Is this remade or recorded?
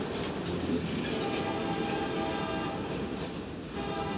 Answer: recorded